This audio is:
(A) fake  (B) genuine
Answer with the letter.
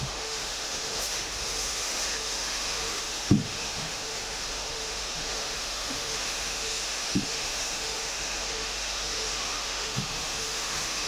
A